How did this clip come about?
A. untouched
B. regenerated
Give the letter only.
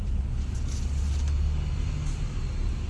A